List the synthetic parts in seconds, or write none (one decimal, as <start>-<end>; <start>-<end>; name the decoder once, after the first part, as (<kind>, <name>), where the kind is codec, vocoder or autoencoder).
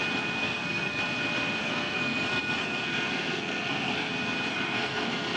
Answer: 0.4-1.0 (codec, SNAC); 1.6-4.1; 4.5-5.4